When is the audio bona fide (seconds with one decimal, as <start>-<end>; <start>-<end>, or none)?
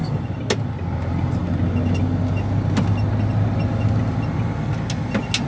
0.0-5.5